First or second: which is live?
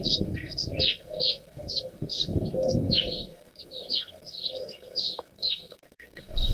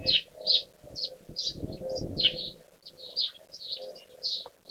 second